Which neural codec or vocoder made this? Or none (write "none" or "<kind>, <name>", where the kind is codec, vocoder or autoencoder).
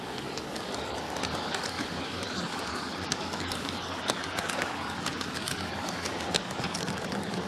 codec, DAC